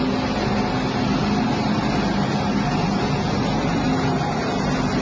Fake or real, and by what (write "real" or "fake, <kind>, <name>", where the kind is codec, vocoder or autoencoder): real